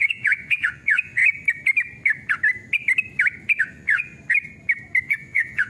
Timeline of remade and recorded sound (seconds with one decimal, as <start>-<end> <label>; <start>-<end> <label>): 0.0-1.2 remade; 1.2-3.6 recorded; 3.6-4.1 remade; 4.1-5.0 recorded; 5.0-5.7 remade